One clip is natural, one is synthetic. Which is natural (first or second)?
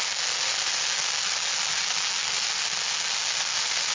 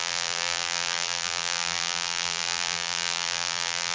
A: first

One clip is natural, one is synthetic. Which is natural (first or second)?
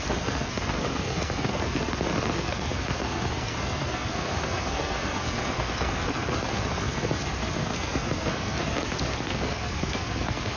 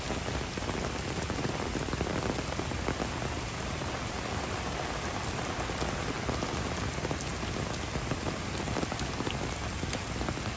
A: second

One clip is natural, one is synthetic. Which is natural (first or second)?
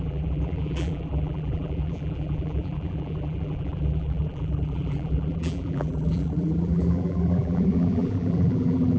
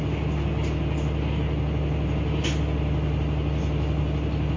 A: second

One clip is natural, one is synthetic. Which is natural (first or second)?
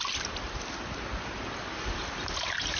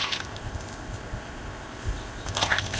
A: first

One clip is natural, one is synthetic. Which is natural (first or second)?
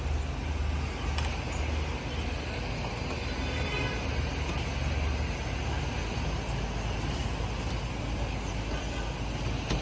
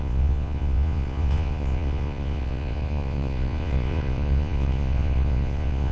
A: first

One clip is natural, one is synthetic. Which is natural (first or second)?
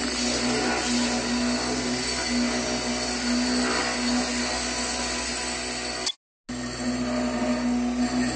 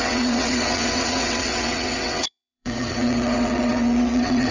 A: first